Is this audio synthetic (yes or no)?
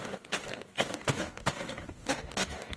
yes